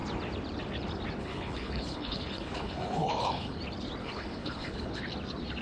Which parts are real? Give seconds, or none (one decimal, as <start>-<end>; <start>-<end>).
0.0-1.2; 3.6-4.0; 5.0-5.6